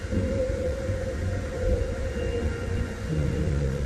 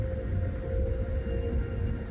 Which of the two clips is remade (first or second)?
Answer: first